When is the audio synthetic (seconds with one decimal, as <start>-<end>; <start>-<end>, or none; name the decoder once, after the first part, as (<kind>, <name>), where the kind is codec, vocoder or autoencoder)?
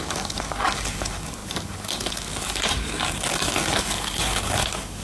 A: 0.0-5.0 (codec, DAC)